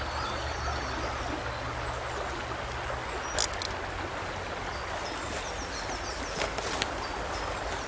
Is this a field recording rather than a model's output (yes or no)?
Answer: yes